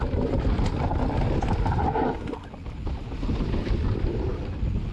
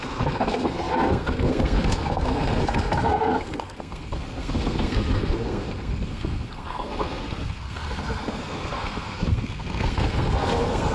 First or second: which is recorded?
first